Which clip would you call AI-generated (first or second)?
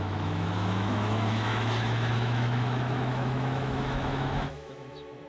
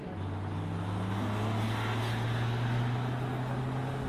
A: first